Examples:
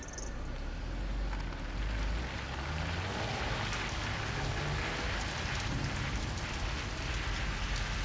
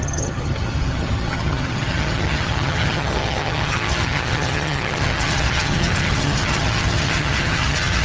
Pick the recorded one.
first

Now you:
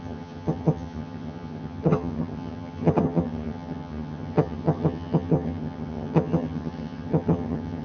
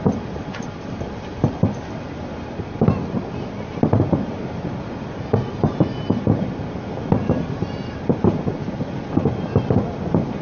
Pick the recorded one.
second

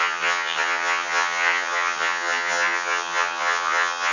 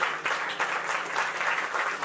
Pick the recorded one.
second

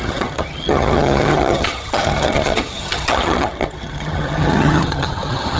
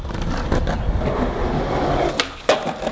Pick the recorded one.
second